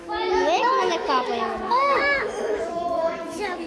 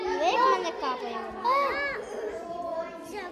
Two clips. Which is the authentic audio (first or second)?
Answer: second